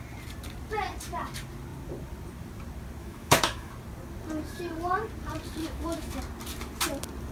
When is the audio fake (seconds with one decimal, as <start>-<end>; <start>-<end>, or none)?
3.0-3.7; 5.6-6.2